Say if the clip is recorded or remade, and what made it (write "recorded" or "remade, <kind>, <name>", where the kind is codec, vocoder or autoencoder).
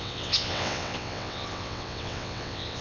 remade, vocoder, WaveNeXt